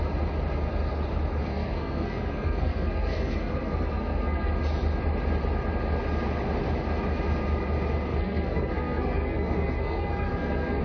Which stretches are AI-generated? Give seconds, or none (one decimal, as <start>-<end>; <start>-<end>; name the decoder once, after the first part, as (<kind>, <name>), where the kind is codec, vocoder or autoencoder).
1.5-4.5 (codec, SNAC); 8.1-10.8